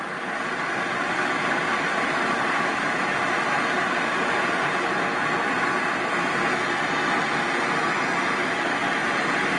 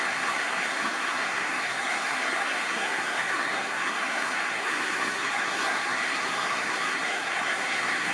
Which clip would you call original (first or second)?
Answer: first